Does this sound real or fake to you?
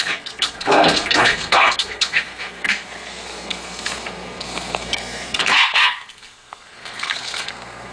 fake